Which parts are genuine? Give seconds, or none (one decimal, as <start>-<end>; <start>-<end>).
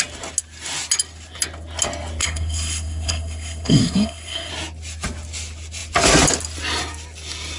0.0-2.2; 4.5-7.6